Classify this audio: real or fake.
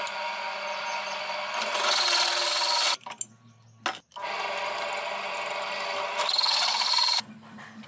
real